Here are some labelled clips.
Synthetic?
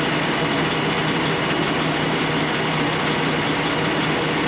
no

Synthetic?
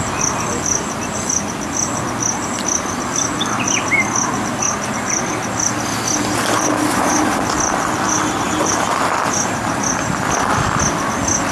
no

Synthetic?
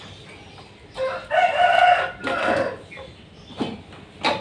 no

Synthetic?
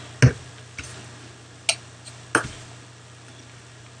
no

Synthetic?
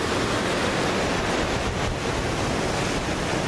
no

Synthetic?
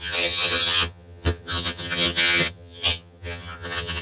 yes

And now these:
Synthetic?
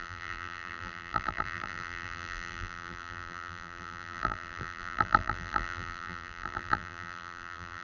yes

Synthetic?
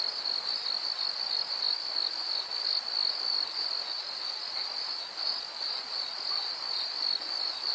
no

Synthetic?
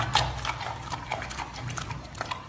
no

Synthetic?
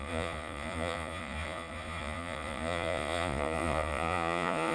yes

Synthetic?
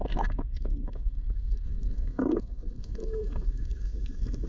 yes